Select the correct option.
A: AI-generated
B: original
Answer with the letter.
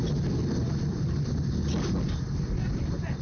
B